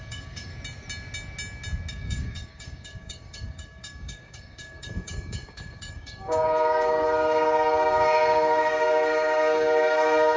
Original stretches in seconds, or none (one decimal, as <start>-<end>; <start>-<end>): 0.5-1.9